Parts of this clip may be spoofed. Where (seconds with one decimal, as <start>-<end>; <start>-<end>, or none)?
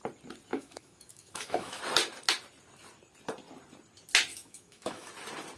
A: 0.5-1.8; 4.3-5.1